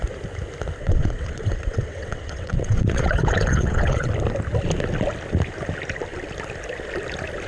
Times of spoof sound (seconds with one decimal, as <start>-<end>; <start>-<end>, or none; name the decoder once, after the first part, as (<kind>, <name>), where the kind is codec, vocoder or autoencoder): 0.8-4.1 (vocoder, WaveNeXt)